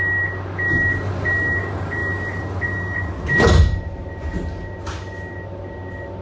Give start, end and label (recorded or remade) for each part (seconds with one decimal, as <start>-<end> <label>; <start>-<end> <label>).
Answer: 0.0-6.2 recorded